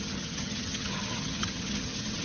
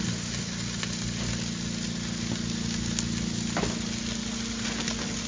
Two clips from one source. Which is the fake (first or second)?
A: first